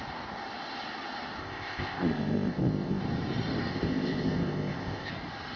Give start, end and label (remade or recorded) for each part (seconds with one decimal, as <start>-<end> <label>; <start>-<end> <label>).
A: 0.0-1.4 recorded; 1.4-3.0 remade; 3.0-3.7 recorded; 3.7-5.1 remade; 5.1-5.6 recorded